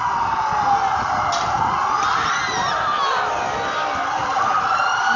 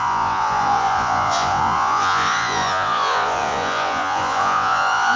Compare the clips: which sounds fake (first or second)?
second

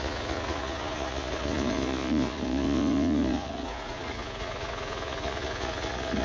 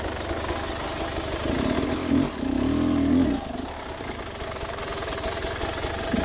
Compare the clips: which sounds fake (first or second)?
first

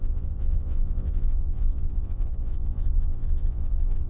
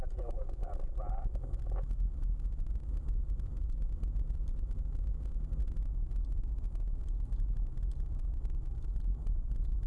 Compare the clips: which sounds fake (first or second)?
first